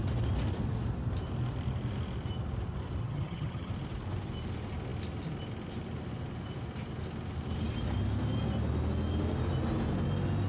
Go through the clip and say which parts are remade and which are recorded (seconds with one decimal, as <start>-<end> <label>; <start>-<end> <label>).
0.0-3.0 recorded; 3.0-3.7 remade; 3.7-10.5 recorded